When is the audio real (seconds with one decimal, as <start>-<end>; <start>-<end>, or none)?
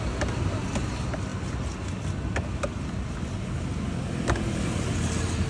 0.0-5.5